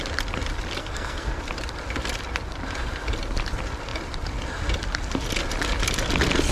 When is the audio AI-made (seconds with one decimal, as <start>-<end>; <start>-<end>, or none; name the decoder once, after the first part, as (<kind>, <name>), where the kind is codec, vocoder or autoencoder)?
0.8-1.4 (codec, SNAC)